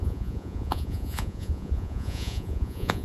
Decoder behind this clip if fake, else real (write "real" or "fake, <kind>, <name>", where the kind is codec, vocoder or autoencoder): fake, vocoder, Vocos